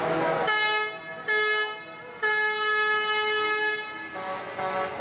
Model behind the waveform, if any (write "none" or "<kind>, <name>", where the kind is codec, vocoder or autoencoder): none